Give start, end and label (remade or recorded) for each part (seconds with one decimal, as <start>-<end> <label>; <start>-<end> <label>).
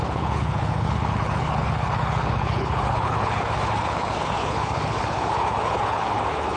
0.0-6.6 remade